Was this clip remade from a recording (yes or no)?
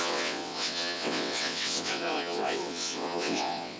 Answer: yes